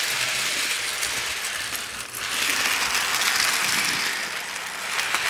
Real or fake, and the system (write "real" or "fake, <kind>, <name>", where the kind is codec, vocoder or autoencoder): real